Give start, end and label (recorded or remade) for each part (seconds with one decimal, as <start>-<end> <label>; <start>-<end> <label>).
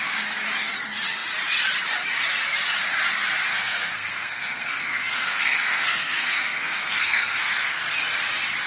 0.0-3.5 recorded; 3.5-7.8 remade; 7.8-8.7 recorded